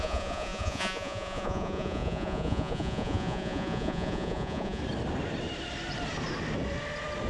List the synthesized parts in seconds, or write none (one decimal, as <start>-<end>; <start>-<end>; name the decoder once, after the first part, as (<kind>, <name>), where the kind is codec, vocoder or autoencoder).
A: 0.0-4.8 (vocoder, Vocos)

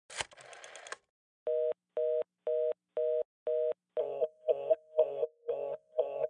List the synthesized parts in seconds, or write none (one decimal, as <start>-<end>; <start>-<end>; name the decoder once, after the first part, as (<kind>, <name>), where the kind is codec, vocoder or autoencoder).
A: 4.0-6.3 (codec, SNAC)

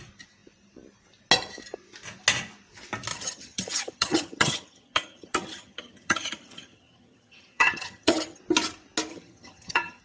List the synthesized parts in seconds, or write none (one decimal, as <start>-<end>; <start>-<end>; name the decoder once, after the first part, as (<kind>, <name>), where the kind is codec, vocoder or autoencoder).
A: 3.1-8.4 (vocoder, HiFi-GAN); 9.1-10.0

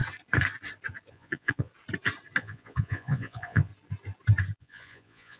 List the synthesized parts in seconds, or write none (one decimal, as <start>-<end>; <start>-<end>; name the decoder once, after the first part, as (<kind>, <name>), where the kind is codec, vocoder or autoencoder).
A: 1.1-1.7 (vocoder, Vocos); 2.4-3.7; 4.6-5.4

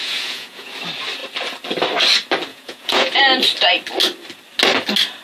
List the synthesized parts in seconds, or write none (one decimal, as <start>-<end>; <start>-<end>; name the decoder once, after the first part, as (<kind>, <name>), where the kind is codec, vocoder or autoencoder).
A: 0.0-0.7 (vocoder, Vocos); 2.5-3.2

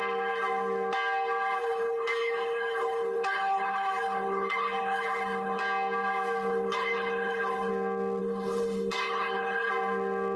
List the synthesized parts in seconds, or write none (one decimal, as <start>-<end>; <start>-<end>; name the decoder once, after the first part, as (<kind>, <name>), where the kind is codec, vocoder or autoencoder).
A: 1.6-5.6 (codec, HILCodec); 6.5-7.7; 8.2-9.7

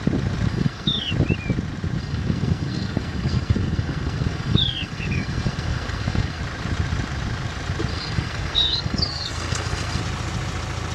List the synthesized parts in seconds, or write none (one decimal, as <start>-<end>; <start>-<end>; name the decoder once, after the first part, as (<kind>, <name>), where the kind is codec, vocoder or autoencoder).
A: 0.5-1.1 (codec, SNAC); 2.0-6.4; 7.9-10.0